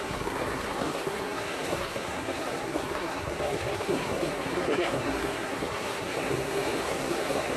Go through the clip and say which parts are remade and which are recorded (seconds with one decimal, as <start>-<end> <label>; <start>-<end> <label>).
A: 0.0-7.6 remade